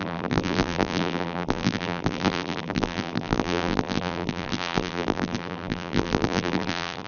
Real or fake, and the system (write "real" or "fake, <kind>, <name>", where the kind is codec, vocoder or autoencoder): fake, vocoder, BigVGAN v2